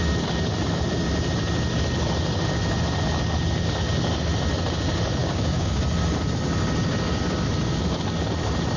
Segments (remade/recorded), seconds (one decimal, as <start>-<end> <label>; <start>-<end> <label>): 0.0-5.2 recorded; 5.2-5.8 remade; 5.8-8.8 recorded